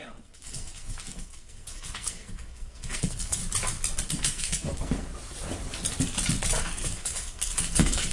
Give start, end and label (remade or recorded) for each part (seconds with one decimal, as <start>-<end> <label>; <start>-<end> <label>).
0.0-3.4 remade; 3.4-4.0 recorded; 4.0-5.1 remade; 5.1-6.6 recorded; 6.6-8.1 remade